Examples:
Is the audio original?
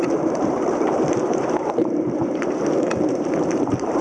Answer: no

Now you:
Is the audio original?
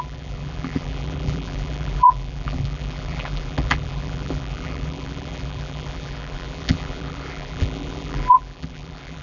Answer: no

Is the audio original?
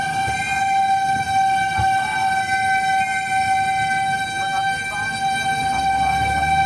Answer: yes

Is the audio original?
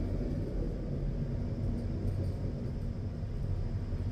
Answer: yes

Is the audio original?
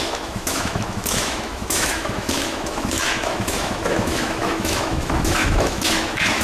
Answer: no